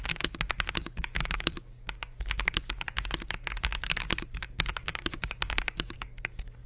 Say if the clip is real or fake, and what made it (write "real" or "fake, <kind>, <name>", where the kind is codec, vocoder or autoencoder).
fake, codec, DAC